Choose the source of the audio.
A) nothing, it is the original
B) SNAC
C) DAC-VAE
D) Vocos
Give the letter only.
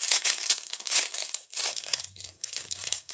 B